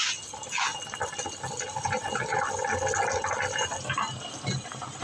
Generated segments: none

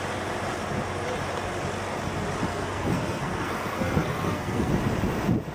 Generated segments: 2.5-4.7 (codec, SNAC)

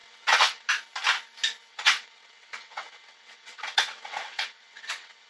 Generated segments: 0.0-0.7 (vocoder, WaveNeXt); 1.7-5.3

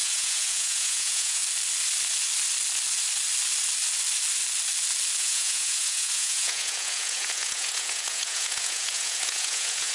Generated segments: 0.0-1.4 (vocoder, Vocos); 5.2-9.9